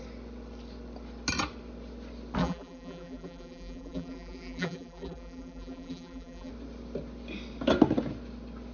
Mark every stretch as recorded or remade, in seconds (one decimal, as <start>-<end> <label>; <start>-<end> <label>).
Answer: 0.0-2.4 recorded; 2.4-6.5 remade; 6.5-8.7 recorded

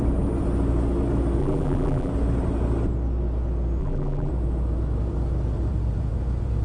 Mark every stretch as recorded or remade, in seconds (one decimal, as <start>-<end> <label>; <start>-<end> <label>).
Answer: 0.0-1.4 recorded; 1.4-2.1 remade; 2.1-3.8 recorded; 3.8-4.3 remade; 4.3-6.6 recorded

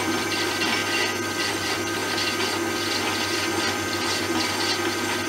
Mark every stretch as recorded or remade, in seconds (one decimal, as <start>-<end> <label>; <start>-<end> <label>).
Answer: 0.0-0.8 remade; 0.8-1.5 recorded; 1.5-2.0 remade; 2.0-5.3 recorded